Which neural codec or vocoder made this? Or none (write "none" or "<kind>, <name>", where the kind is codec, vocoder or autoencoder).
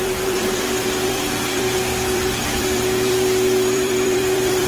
vocoder, BigVGAN v2